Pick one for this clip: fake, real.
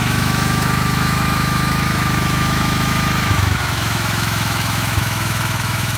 fake